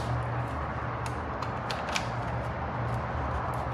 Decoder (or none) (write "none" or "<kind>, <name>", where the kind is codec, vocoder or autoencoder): none